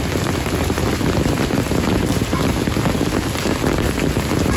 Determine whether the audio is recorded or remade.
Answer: recorded